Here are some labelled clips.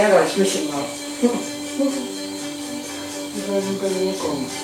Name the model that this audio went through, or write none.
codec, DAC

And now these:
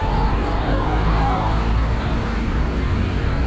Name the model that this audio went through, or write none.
codec, DAC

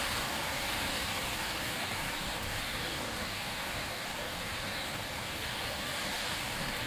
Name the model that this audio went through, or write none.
codec, DAC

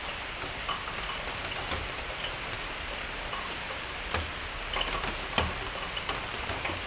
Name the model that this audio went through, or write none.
none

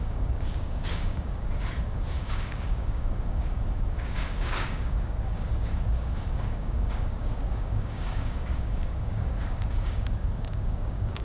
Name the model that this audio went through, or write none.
codec, DAC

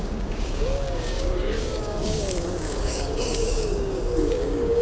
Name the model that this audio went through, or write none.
codec, DAC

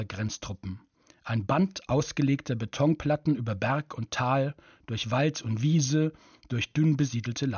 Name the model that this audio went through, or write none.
none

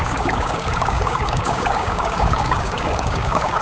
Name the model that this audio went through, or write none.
codec, DAC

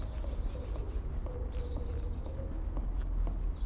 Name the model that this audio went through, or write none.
none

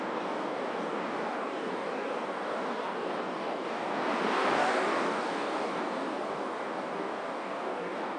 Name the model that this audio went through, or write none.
codec, DAC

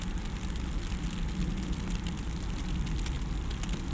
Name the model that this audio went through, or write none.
none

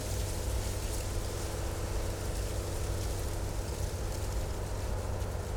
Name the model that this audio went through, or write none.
none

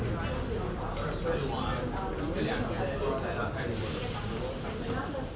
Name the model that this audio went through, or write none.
none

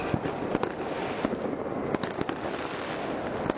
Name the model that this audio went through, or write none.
none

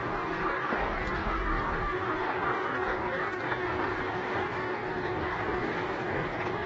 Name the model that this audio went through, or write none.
codec, DAC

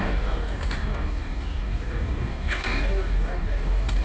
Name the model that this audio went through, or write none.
codec, DAC